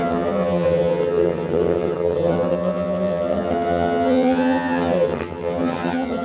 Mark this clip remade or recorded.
remade